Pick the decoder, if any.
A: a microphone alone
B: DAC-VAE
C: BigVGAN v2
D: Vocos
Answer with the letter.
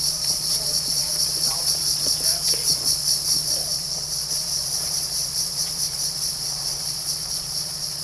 D